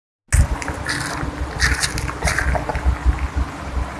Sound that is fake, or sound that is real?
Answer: real